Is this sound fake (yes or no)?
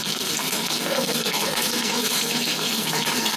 yes